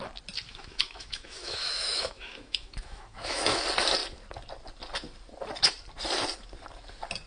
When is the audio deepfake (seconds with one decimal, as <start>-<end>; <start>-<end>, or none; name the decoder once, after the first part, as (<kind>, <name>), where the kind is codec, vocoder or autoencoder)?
0.5-3.6 (autoencoder, DAC-VAE)